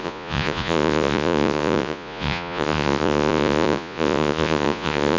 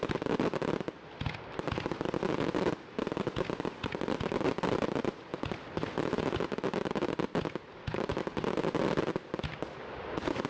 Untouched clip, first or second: second